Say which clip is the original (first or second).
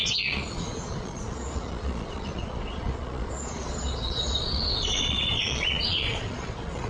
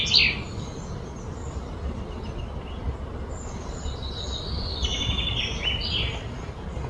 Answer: second